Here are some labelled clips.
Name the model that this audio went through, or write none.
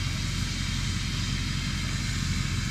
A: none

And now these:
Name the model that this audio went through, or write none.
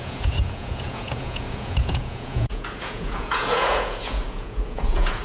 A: vocoder, Vocos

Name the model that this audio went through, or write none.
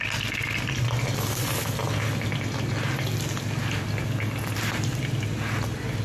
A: none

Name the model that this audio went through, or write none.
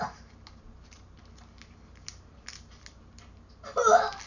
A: none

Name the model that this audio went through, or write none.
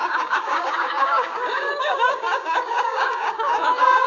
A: codec, DAC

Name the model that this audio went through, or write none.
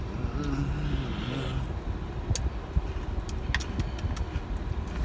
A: none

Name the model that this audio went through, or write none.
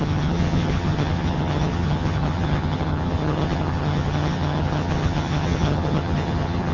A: vocoder, HiFi-GAN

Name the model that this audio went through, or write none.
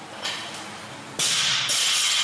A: none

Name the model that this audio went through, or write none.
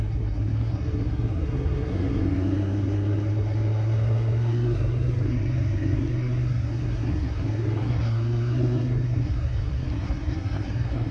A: codec, SNAC